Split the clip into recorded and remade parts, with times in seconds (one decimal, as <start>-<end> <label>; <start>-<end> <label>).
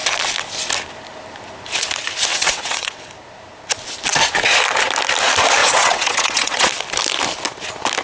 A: 0.0-2.3 recorded; 2.3-3.1 remade; 3.1-5.6 recorded; 5.6-6.7 remade; 6.7-8.0 recorded